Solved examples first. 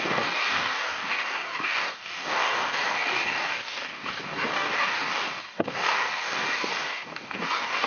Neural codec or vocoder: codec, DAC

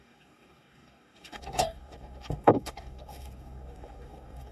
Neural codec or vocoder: codec, DAC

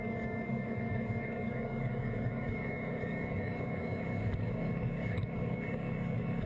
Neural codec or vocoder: codec, DAC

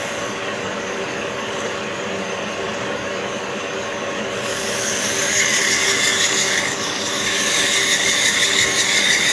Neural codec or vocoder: codec, DAC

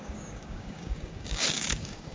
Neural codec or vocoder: codec, DAC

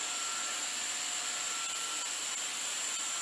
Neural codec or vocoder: none